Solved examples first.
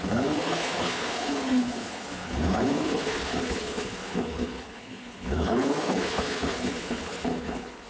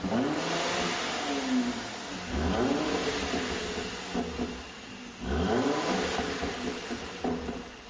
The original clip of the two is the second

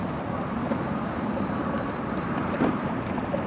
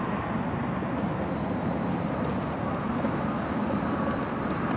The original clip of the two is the second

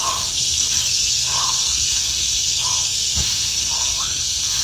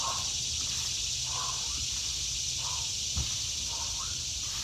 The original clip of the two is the second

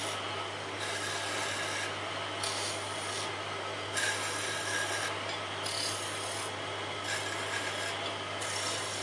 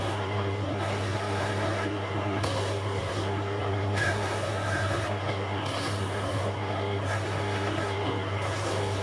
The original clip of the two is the first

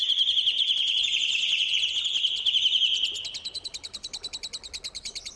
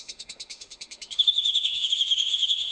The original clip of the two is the first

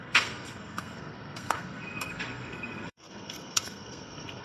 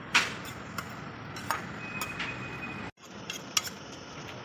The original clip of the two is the second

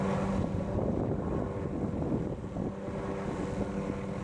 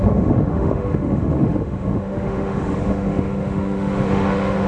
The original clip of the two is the first